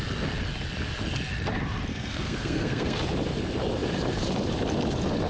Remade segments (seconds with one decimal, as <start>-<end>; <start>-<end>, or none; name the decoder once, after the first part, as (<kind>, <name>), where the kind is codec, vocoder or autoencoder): 1.9-3.0 (codec, SNAC)